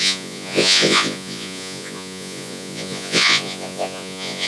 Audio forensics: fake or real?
fake